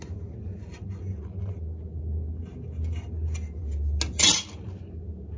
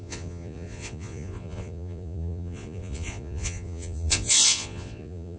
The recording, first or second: first